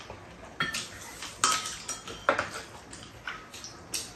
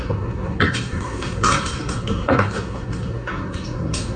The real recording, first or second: first